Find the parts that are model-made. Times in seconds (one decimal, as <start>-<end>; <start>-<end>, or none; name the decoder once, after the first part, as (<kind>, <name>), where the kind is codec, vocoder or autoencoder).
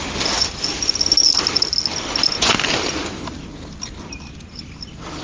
none